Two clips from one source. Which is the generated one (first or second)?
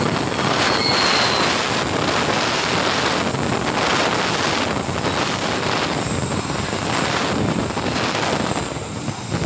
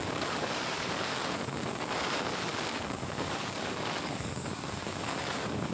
second